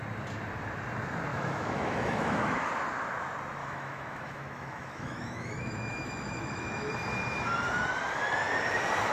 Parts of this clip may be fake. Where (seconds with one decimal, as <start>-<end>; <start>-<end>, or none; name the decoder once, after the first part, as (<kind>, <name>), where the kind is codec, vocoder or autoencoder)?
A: 1.3-2.7 (autoencoder, DAC-VAE); 3.6-6.9